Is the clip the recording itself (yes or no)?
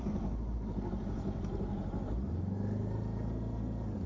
yes